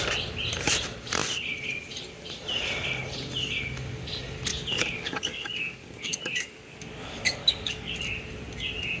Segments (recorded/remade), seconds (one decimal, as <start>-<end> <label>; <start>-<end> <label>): 0.0-4.5 recorded; 4.5-8.0 remade; 8.0-9.0 recorded